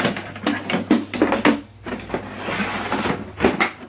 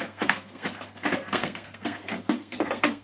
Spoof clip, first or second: second